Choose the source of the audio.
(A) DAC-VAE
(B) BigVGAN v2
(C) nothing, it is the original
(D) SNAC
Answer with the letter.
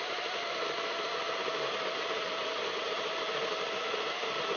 B